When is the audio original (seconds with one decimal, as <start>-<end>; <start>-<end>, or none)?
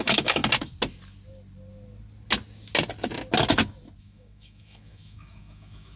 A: 0.4-4.0